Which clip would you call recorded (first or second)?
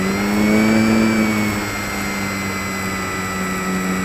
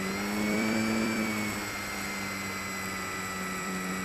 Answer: first